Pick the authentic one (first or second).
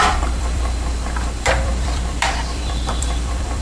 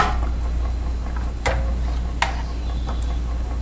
second